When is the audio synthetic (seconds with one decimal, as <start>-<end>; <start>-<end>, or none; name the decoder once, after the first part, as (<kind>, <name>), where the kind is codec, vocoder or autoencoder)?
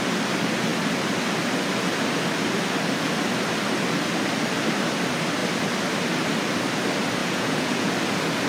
7.2-7.9 (vocoder, Vocos)